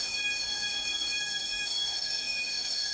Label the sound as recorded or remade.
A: remade